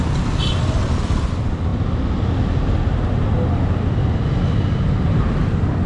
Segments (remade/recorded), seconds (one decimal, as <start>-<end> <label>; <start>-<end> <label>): 0.0-5.9 recorded